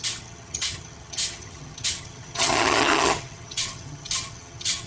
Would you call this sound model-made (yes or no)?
yes